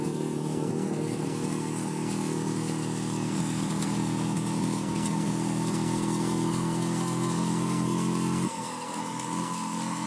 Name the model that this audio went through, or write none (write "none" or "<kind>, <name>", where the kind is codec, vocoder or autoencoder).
codec, SNAC